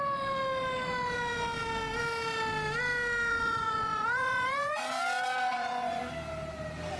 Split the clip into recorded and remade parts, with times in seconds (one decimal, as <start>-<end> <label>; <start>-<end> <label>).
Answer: 0.0-3.3 recorded; 3.3-5.0 remade; 5.0-5.5 recorded; 5.5-6.0 remade; 6.0-7.0 recorded